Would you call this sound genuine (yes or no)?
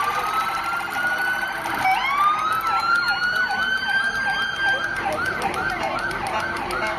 yes